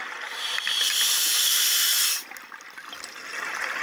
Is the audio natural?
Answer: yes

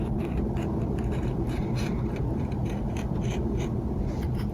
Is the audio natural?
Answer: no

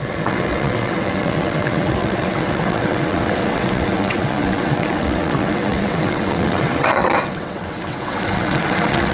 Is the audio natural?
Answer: no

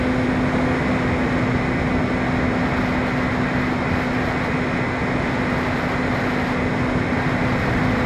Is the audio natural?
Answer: yes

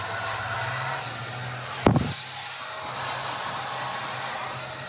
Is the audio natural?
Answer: yes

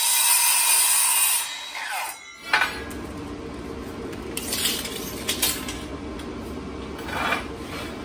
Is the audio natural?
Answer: yes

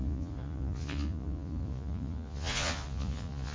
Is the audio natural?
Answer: no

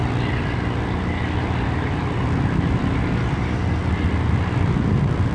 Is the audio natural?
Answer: yes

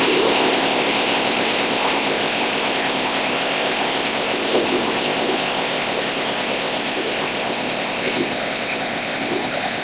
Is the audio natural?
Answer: no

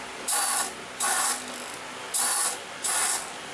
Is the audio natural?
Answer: yes